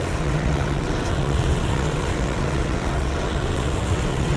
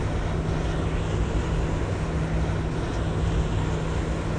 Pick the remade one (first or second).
first